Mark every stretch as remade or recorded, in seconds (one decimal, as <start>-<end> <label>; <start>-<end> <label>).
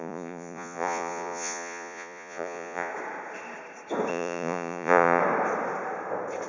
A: 0.0-2.9 remade; 2.9-4.1 recorded; 4.1-5.2 remade; 5.2-6.5 recorded